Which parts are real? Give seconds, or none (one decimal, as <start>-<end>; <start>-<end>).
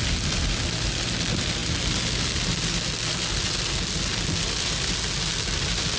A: 0.0-6.0